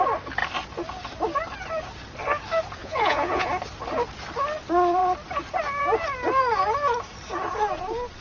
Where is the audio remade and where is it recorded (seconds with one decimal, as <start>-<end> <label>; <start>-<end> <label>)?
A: 0.0-2.8 recorded; 2.8-3.5 remade; 3.5-8.2 recorded